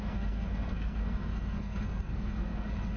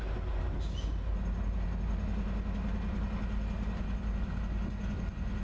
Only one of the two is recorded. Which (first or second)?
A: second